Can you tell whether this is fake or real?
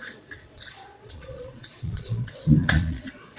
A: fake